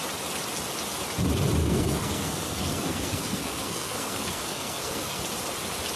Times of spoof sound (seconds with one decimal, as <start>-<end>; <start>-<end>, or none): 1.6-5.2